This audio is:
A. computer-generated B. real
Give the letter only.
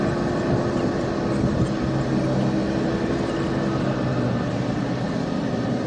B